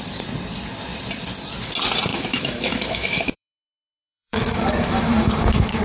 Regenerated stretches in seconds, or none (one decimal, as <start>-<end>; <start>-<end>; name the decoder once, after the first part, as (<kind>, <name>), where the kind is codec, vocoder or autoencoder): 2.1-5.8 (autoencoder, DAC-VAE)